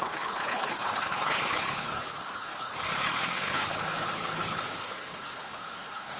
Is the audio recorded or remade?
remade